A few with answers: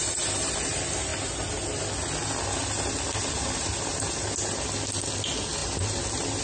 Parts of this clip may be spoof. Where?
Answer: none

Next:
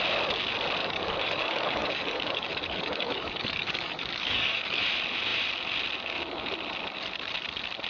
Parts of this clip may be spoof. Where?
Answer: 0.8-4.8

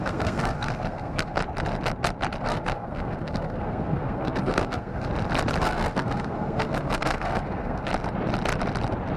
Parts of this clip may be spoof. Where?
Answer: 0.0-1.4; 2.4-5.1; 5.6-7.9

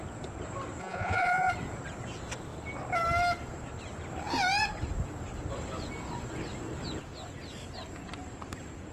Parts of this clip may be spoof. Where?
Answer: 0.8-1.5

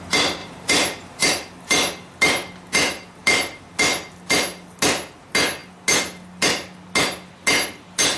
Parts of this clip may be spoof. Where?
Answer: 0.4-1.3; 3.2-3.8

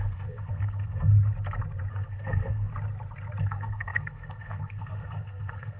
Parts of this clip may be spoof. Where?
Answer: 0.0-1.1; 1.9-2.7; 3.4-5.8

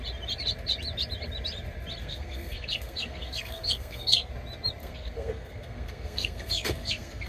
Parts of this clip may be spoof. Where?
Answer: 2.0-4.3; 4.8-7.3

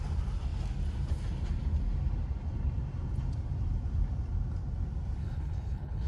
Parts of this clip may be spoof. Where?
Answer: 5.2-6.1